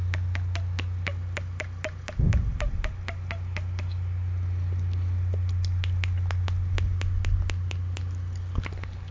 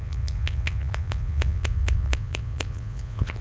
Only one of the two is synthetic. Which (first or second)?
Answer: second